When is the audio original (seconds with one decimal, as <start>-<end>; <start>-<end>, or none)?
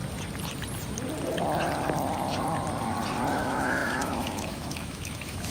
0.0-3.3